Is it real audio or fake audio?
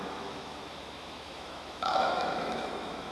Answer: fake